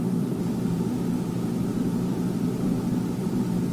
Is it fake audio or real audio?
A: fake